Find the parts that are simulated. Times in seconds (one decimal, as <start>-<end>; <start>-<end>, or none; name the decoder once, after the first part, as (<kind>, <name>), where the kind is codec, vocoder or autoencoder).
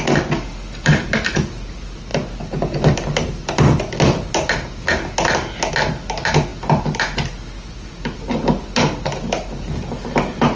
none